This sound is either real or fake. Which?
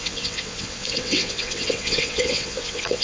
fake